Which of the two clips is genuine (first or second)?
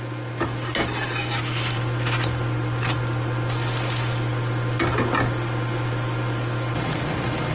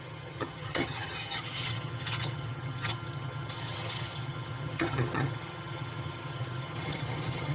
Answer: first